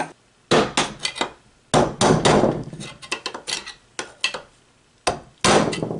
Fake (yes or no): no